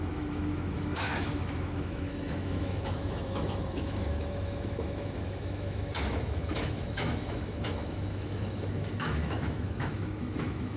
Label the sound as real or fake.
fake